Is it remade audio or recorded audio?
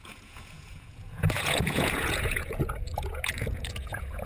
remade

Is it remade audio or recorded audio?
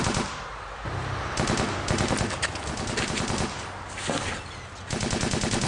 recorded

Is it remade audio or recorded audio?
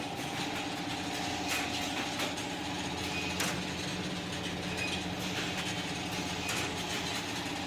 recorded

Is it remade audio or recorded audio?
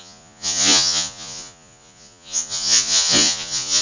remade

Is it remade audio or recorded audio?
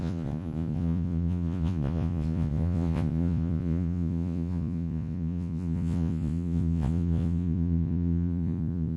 remade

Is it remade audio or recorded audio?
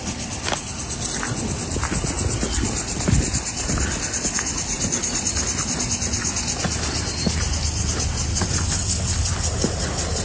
recorded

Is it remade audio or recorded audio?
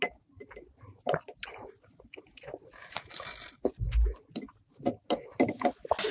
recorded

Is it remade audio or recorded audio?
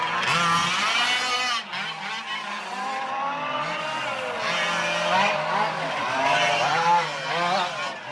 recorded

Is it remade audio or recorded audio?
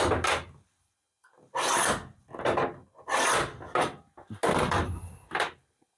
recorded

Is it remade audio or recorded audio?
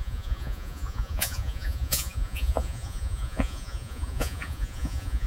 remade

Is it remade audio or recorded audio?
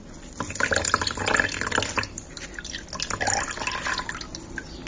recorded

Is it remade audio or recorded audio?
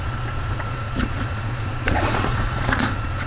remade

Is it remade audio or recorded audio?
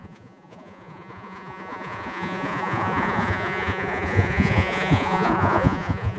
remade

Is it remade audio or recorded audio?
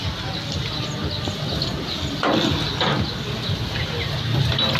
recorded